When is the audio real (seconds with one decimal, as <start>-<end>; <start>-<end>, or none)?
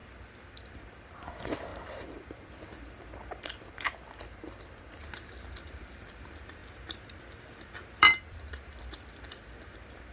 6.6-8.0